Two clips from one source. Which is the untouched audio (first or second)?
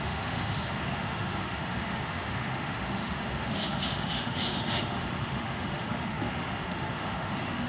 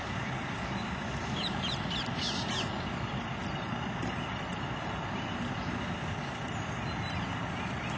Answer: second